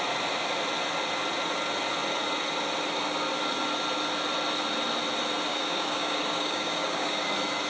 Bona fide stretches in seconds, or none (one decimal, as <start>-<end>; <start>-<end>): 0.0-5.5; 7.3-7.7